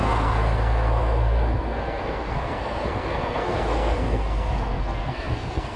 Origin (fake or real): fake